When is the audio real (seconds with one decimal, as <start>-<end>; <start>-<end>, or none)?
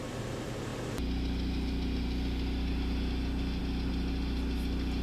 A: 0.0-5.0